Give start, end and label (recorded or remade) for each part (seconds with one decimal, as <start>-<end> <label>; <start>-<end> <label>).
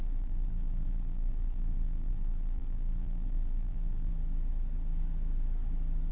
0.0-4.1 remade; 4.1-6.1 recorded